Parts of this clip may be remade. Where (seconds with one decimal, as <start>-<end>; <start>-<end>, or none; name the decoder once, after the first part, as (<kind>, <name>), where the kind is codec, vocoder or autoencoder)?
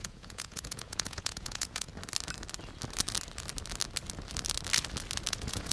0.0-1.9 (vocoder, Vocos); 5.3-5.7